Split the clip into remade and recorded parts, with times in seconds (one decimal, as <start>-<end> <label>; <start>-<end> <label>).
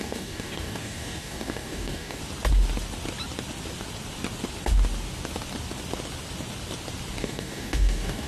0.0-2.2 remade; 2.2-7.2 recorded; 7.2-8.3 remade